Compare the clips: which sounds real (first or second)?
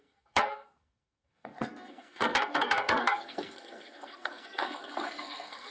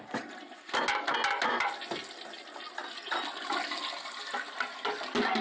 second